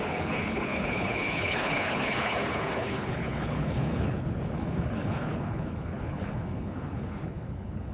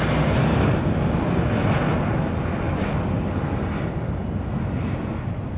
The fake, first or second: first